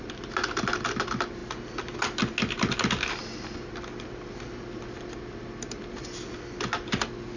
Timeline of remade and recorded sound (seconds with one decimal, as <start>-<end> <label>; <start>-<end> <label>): 0.0-7.4 recorded